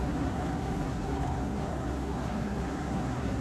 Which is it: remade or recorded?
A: remade